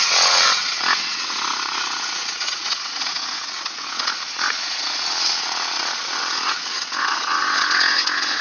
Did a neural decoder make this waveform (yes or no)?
yes